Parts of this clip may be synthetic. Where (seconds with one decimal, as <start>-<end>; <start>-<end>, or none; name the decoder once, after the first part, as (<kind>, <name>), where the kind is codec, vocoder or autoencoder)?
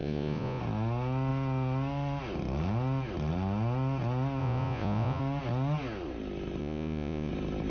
0.0-0.6 (vocoder, Vocos); 4.4-5.2; 6.6-7.3